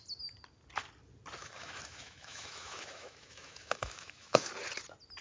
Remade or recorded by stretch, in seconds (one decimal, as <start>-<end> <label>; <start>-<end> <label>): 0.0-1.4 recorded; 1.4-4.5 remade; 4.5-5.2 recorded